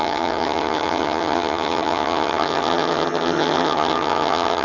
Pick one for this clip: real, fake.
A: fake